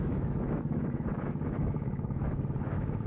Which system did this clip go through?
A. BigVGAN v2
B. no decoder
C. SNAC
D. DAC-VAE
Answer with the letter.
D